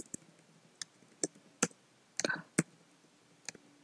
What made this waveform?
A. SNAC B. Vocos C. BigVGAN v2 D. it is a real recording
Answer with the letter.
D